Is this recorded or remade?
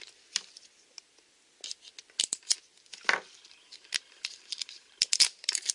recorded